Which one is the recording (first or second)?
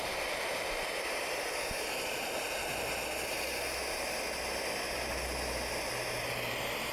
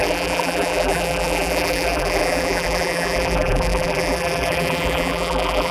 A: first